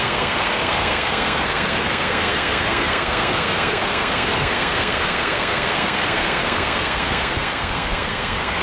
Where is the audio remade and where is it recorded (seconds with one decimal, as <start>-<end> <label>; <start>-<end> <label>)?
0.0-8.6 remade